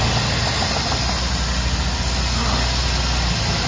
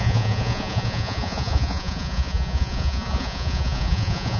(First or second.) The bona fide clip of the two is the first